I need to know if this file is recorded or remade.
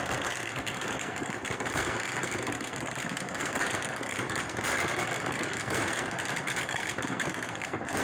remade